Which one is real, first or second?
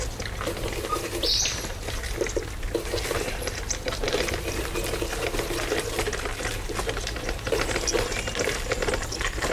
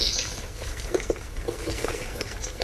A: first